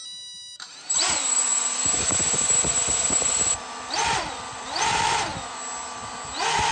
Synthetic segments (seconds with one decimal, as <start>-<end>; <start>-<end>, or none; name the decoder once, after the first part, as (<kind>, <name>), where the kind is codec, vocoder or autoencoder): 0.0-5.3 (vocoder, BigVGAN v2)